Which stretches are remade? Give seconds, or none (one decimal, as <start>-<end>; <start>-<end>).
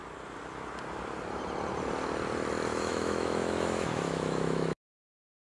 2.7-4.9